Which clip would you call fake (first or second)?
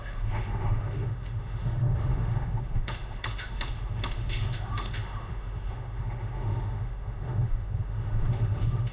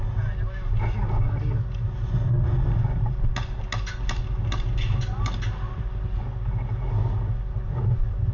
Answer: first